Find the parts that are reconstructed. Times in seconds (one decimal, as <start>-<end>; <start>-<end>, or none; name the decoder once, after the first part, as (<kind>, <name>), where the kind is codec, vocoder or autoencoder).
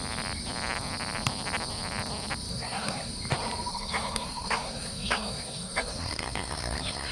2.5-3.1 (codec, SNAC); 3.7-7.1